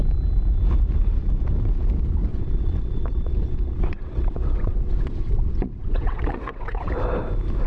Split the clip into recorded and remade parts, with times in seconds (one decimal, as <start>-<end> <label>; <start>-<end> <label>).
0.0-2.3 recorded; 2.3-6.9 remade; 6.9-7.7 recorded